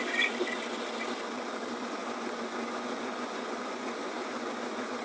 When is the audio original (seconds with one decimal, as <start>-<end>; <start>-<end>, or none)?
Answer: 0.0-2.0